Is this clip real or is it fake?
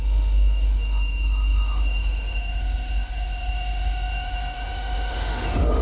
fake